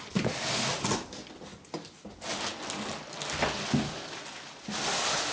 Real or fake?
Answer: real